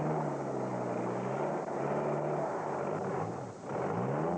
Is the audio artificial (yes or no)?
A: no